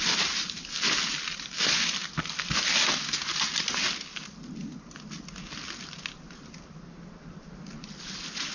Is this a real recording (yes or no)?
yes